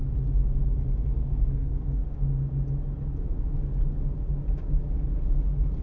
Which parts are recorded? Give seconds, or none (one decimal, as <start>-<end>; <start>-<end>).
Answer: 0.0-1.2; 2.2-5.8